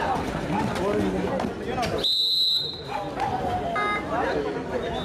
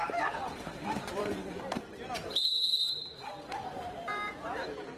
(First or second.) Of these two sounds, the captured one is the first